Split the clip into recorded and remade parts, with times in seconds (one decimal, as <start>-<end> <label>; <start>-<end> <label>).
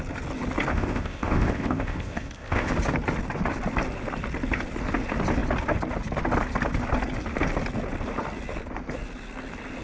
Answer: 0.0-0.7 recorded; 0.7-2.7 remade; 2.7-9.8 recorded